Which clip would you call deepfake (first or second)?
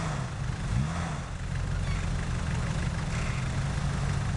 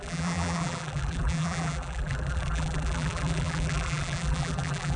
second